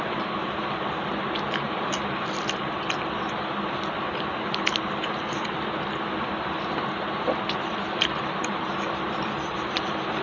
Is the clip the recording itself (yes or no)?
yes